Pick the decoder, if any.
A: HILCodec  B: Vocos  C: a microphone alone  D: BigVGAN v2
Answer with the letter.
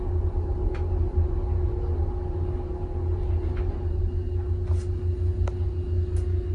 C